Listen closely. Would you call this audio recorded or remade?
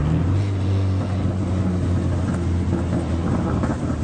recorded